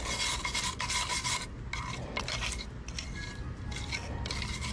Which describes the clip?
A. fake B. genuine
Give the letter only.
B